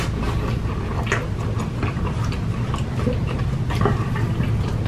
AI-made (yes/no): no